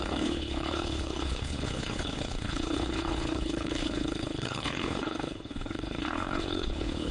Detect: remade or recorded remade